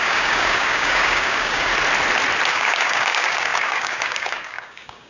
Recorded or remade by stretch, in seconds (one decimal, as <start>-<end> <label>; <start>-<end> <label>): 0.0-1.7 remade; 1.7-2.5 recorded; 2.5-5.1 remade